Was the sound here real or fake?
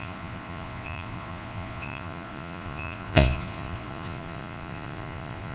fake